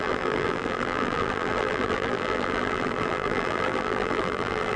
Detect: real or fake fake